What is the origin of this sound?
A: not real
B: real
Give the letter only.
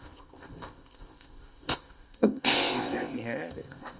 A